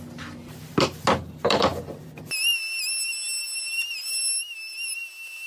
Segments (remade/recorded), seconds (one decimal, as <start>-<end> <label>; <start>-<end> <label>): 0.0-5.5 recorded